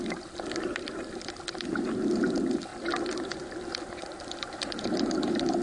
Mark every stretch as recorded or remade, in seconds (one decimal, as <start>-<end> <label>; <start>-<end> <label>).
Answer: 0.0-5.6 recorded